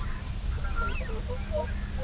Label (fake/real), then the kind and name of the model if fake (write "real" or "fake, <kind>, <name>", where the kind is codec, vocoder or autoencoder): real